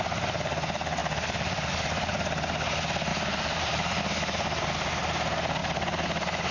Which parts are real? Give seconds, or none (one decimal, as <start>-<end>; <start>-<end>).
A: 0.0-1.0; 1.7-3.1; 4.0-6.5